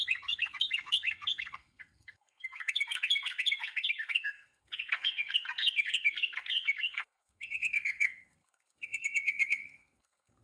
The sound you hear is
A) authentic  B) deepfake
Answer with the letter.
B